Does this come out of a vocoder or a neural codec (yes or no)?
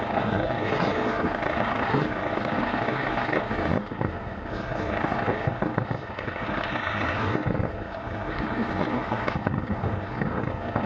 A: yes